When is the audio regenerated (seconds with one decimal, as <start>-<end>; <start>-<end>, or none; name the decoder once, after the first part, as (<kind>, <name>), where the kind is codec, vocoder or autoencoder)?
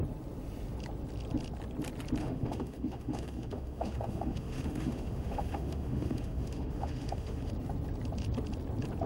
2.2-7.5 (autoencoder, DAC-VAE)